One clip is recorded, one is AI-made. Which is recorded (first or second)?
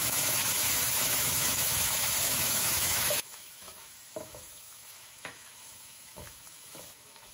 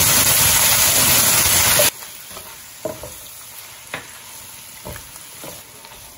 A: second